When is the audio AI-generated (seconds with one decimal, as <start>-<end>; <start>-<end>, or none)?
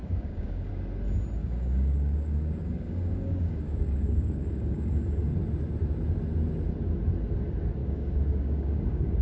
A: 0.0-0.7; 1.4-4.9; 7.8-9.2